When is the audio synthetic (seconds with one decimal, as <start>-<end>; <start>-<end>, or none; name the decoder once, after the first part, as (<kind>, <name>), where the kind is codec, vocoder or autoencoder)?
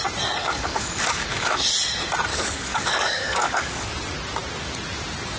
0.4-1.7 (codec, DAC); 2.3-3.9